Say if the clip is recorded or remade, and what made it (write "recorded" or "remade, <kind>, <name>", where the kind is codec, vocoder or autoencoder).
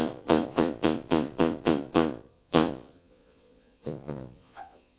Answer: remade, vocoder, Vocos